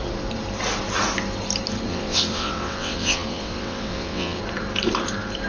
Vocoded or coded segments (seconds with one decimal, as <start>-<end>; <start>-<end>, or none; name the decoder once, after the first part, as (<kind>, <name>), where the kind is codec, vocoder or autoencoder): 1.9-4.4 (vocoder, WaveNeXt)